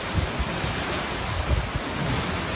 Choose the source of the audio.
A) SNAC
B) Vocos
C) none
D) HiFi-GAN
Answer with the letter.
C